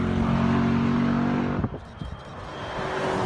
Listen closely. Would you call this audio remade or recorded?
recorded